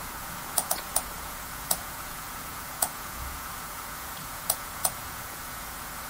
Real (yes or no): no